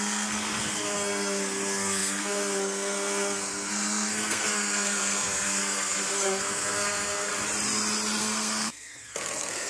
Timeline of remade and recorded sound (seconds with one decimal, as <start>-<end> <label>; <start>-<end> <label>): 0.0-7.3 remade; 7.3-8.2 recorded; 8.2-9.7 remade